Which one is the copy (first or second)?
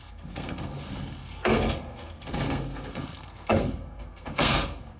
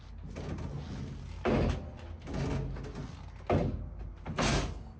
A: first